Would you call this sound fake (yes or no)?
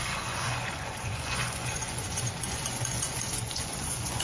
yes